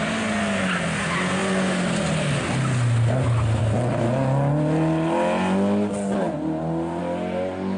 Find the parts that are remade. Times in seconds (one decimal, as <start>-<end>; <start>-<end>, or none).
none